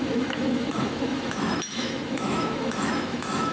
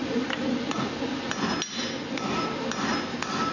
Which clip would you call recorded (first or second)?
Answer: second